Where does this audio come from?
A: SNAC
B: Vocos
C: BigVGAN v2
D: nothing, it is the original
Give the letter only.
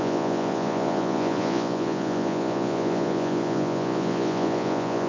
B